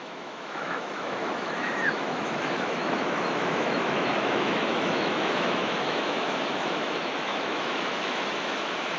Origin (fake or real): fake